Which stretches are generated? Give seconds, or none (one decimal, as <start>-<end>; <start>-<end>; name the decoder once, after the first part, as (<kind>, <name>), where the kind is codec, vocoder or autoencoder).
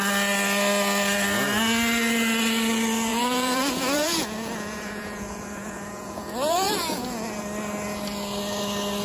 3.1-7.4 (vocoder, Vocos)